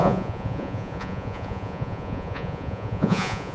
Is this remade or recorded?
remade